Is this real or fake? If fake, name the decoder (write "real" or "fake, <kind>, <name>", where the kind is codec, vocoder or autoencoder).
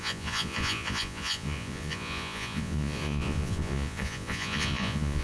fake, vocoder, Vocos